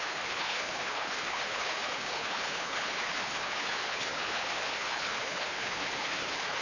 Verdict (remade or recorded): remade